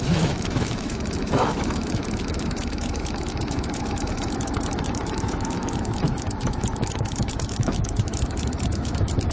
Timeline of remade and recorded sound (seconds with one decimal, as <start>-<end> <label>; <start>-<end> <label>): 0.0-9.3 remade